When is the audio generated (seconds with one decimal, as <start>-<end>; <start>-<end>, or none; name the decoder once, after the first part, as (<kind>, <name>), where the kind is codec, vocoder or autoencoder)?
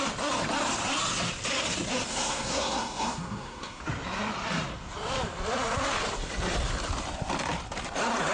2.1-3.8 (codec, SNAC)